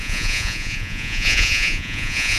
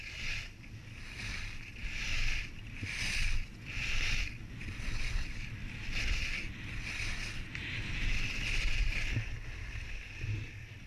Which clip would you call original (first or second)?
second